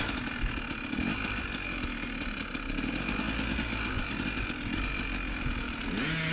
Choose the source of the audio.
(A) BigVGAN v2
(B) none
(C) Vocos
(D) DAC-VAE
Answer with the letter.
B